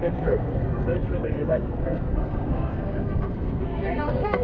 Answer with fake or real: fake